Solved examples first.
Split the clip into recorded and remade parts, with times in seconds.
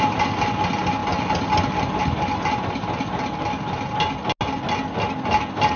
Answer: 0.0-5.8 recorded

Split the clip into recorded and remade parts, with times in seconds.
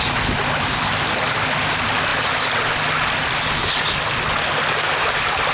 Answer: 0.0-5.5 recorded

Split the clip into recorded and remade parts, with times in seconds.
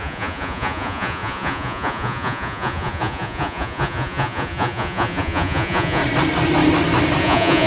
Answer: 0.0-6.0 remade; 6.0-7.2 recorded; 7.2-7.7 remade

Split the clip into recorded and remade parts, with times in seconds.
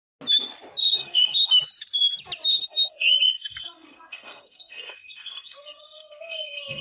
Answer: 0.0-0.8 recorded; 0.8-1.5 remade; 1.5-2.5 recorded; 2.5-6.8 remade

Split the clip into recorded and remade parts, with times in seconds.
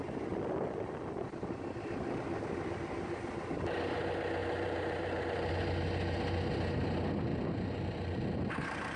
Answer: 0.0-4.4 recorded; 4.4-5.5 remade; 5.5-7.3 recorded; 7.3-8.5 remade; 8.5-9.0 recorded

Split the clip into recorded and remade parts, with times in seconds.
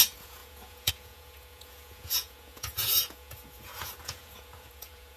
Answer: 0.0-5.2 remade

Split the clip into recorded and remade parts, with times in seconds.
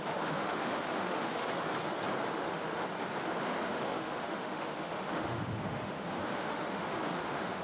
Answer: 0.0-1.5 remade; 1.5-2.3 recorded; 2.3-2.8 remade; 2.8-3.5 recorded; 3.5-7.6 remade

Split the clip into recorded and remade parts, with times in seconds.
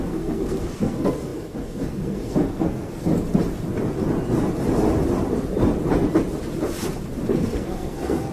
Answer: 0.0-3.1 remade; 3.1-7.3 recorded; 7.3-8.3 remade